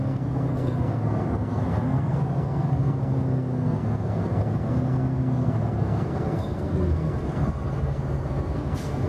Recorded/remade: remade